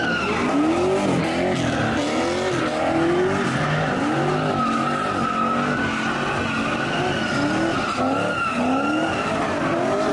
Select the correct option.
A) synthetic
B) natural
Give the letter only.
B